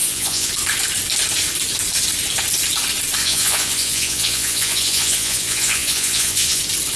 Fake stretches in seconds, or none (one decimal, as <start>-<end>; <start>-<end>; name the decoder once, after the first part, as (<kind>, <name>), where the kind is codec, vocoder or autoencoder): 0.0-0.5 (vocoder, Vocos); 3.2-6.6